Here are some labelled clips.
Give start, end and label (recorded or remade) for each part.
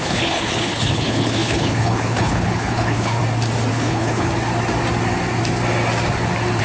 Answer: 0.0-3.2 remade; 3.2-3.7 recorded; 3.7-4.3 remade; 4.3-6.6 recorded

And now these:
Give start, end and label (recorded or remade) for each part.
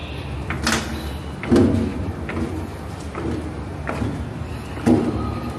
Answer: 0.0-5.6 recorded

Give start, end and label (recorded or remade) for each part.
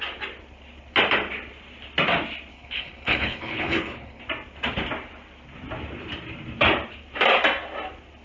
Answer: 0.0-2.5 recorded; 2.5-4.2 remade; 4.2-8.2 recorded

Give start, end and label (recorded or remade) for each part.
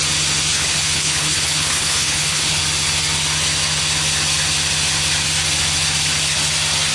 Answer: 0.0-0.5 recorded; 0.5-2.6 remade; 2.6-6.9 recorded